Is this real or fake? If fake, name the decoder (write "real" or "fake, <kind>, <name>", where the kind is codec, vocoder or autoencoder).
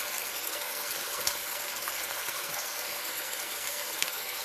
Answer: fake, codec, SNAC